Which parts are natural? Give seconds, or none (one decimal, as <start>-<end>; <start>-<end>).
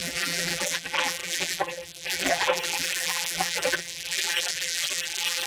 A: none